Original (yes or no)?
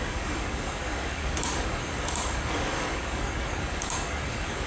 no